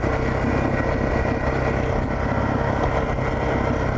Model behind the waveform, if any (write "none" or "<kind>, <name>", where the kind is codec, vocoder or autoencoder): none